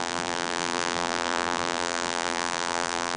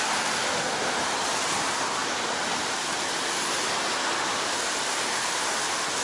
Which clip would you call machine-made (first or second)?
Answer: first